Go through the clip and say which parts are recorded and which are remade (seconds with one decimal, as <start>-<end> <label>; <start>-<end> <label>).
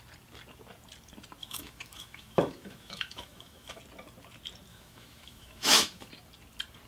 0.0-1.4 recorded; 1.4-3.8 remade; 3.8-4.7 recorded; 4.7-6.1 remade; 6.1-6.9 recorded